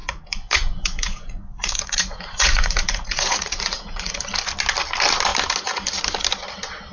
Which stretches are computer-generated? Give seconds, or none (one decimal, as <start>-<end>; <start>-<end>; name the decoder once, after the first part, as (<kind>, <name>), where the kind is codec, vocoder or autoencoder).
0.0-4.1 (vocoder, Vocos)